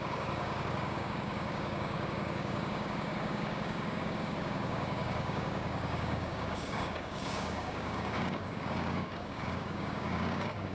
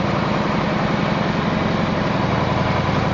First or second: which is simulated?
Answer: first